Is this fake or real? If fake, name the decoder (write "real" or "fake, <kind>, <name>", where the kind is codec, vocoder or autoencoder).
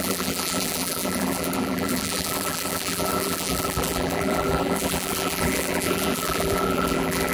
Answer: fake, vocoder, BigVGAN v2